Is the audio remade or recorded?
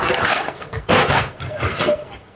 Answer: remade